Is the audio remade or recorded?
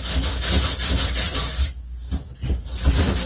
recorded